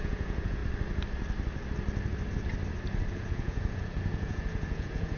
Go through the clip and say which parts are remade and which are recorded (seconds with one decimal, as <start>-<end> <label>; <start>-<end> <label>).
0.0-0.6 remade; 0.6-3.1 recorded; 3.1-5.2 remade